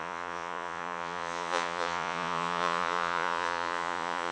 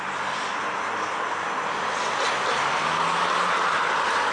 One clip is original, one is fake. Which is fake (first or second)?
first